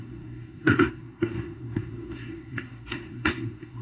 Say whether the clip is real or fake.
fake